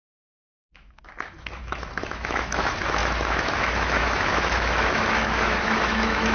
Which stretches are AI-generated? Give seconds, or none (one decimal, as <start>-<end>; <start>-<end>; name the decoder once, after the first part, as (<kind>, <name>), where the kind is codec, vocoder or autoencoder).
0.0-6.3 (autoencoder, DAC-VAE)